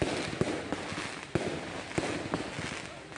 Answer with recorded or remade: recorded